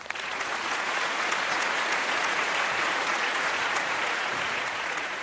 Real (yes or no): no